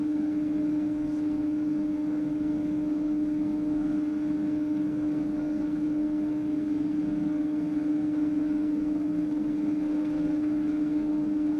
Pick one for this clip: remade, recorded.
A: remade